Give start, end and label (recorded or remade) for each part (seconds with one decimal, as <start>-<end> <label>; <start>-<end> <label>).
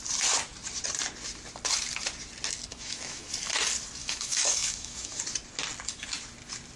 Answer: 0.0-2.7 recorded; 2.7-3.3 remade; 3.3-4.0 recorded; 4.0-5.2 remade; 5.2-6.8 recorded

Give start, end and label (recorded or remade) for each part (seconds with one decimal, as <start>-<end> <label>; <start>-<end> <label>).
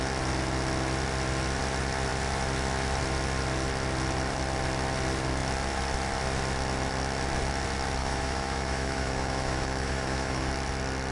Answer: 0.0-8.0 recorded; 8.0-10.5 remade; 10.5-11.1 recorded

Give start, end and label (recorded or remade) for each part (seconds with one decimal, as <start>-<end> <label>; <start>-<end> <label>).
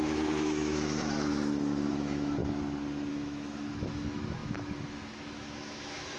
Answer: 0.0-1.3 remade; 1.3-1.9 recorded; 1.9-2.4 remade; 2.4-3.1 recorded; 3.1-6.2 remade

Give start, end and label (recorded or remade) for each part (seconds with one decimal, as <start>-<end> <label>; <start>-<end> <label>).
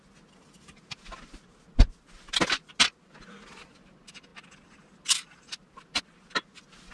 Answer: 0.0-6.9 recorded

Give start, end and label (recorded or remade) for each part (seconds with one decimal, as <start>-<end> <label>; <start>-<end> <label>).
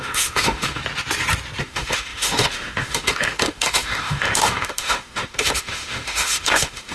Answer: 0.0-0.8 remade; 0.8-1.6 recorded; 1.6-6.9 remade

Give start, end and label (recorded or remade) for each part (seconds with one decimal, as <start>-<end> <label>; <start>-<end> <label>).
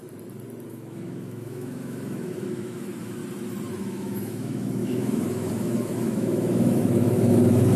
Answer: 0.0-0.7 recorded; 0.7-3.2 remade; 3.2-3.8 recorded; 3.8-7.8 remade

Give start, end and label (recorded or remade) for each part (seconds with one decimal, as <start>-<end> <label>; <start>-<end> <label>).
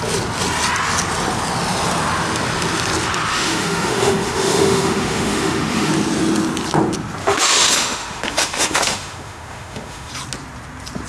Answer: 0.0-3.3 recorded; 3.3-5.9 remade; 5.9-7.2 recorded; 7.2-10.1 remade; 10.1-11.1 recorded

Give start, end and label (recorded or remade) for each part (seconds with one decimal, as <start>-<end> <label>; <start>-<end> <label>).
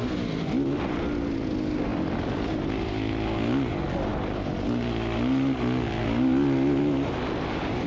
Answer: 0.0-7.9 recorded